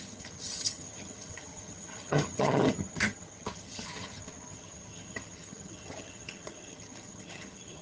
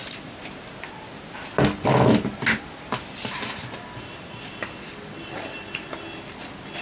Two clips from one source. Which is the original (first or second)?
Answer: second